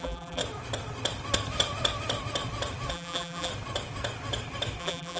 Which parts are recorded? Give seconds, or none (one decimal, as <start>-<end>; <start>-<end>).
0.4-2.9; 3.5-4.8